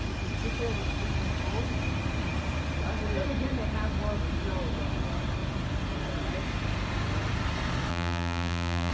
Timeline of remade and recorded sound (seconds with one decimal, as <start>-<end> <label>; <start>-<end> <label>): 0.0-7.9 recorded; 7.9-8.9 remade